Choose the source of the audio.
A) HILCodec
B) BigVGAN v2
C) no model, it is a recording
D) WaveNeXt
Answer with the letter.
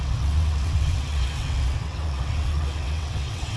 D